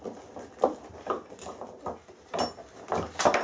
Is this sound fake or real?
real